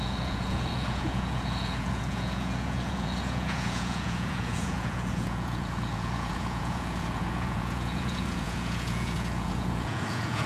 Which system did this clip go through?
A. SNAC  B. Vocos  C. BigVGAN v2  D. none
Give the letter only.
B